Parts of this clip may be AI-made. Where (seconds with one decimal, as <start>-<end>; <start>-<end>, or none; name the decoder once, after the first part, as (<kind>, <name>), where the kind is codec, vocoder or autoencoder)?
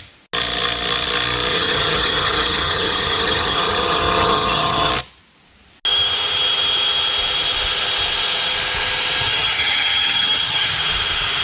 1.5-4.9 (vocoder, HiFi-GAN); 9.3-10.7